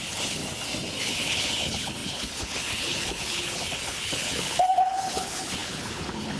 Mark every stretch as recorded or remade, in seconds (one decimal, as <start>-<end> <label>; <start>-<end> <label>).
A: 0.0-0.4 remade; 0.4-1.0 recorded; 1.0-6.4 remade